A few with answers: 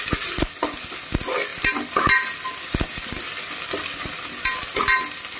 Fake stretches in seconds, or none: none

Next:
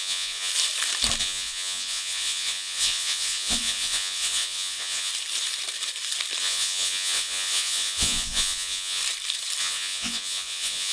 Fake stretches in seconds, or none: 0.0-0.5 (vocoder, Vocos); 1.2-5.1; 6.4-9.0; 9.6-10.9

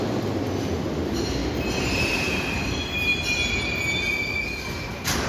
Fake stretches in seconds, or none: 0.0-1.4 (vocoder, BigVGAN v2); 2.1-3.1; 3.7-5.3